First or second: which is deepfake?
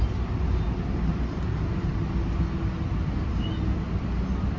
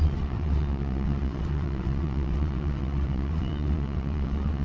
second